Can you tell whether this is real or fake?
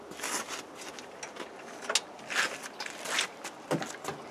real